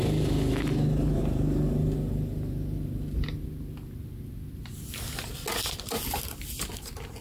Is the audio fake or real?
real